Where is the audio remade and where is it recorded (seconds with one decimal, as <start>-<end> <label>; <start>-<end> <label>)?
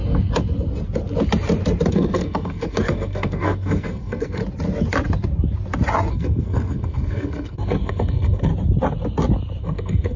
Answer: 0.0-1.9 recorded; 1.9-4.4 remade; 4.4-6.1 recorded; 6.1-8.5 remade; 8.5-9.6 recorded; 9.6-10.2 remade